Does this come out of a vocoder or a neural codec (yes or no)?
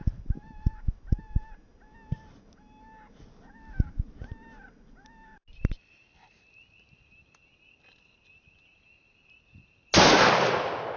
no